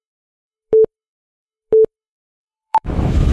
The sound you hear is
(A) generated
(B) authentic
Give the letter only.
A